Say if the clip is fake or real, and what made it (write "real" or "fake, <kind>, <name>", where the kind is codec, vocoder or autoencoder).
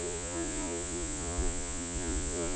fake, vocoder, Vocos